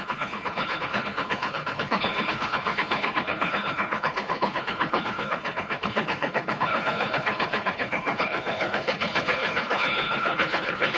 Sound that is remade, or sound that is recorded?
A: remade